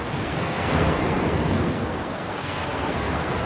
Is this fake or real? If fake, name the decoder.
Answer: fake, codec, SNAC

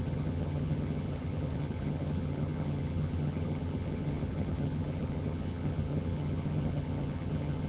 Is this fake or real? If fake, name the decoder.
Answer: fake, vocoder, HiFi-GAN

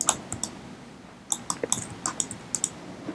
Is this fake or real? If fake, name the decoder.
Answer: real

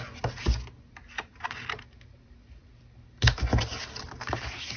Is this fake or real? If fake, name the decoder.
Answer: real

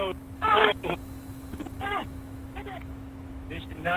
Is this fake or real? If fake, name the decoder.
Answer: fake, autoencoder, DAC-VAE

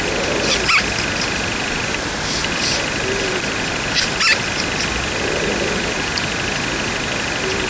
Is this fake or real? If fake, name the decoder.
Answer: real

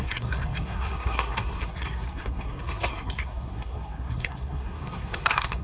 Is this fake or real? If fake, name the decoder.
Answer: fake, codec, SNAC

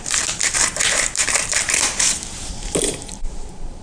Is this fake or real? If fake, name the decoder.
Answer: fake, vocoder, BigVGAN v2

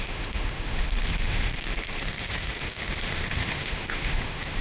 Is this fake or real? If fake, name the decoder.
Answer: fake, autoencoder, DAC-VAE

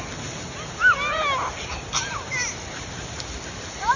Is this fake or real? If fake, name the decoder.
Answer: real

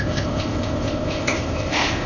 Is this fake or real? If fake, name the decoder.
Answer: fake, codec, ZipCodec